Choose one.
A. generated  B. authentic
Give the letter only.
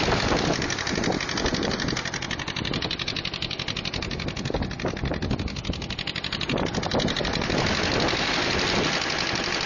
B